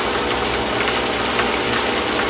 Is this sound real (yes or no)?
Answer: yes